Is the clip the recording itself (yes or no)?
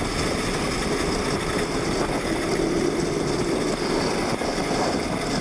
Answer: yes